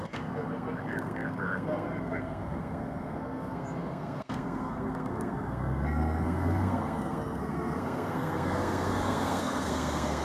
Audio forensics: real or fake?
fake